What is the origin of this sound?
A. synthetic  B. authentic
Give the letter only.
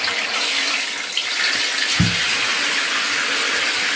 B